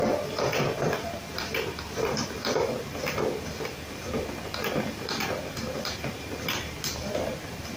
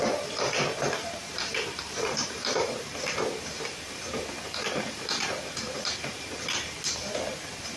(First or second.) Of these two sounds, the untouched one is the first